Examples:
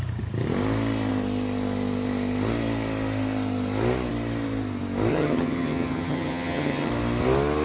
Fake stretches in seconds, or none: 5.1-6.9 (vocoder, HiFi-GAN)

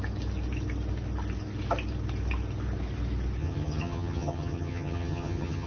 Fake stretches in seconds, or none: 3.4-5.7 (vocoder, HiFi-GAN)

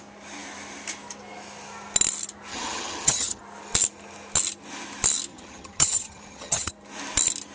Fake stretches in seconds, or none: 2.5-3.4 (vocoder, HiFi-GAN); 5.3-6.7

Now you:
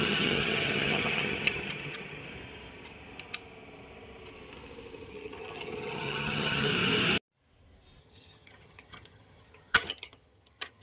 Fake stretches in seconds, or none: 0.0-2.2 (vocoder, HiFi-GAN); 5.1-6.7; 8.0-10.8

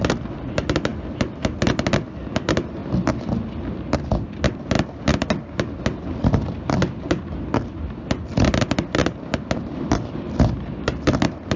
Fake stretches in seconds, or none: none